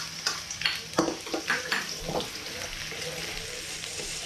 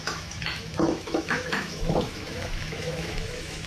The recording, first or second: first